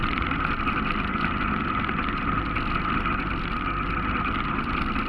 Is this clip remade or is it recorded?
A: recorded